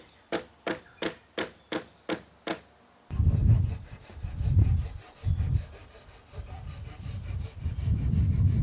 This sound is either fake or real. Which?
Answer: real